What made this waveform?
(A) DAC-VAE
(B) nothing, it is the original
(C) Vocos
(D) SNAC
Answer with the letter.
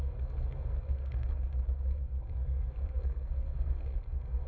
D